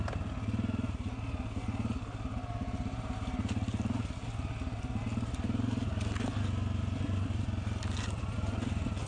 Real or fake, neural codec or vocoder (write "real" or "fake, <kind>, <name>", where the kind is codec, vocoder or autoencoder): real